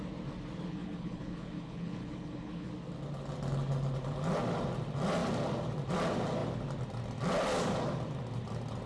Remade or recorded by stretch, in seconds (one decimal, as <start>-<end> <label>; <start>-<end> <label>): 0.0-0.7 recorded; 0.7-2.7 remade; 2.7-8.9 recorded